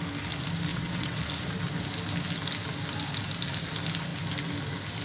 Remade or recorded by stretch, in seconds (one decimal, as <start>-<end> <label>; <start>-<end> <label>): 0.0-0.7 recorded; 0.7-1.2 remade; 1.2-5.0 recorded